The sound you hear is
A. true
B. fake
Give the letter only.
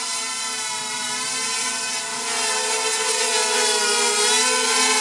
A